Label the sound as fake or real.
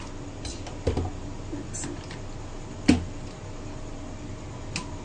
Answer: real